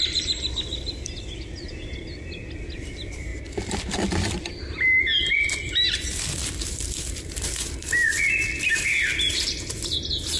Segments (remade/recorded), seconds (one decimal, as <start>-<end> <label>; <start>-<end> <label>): 0.0-10.4 remade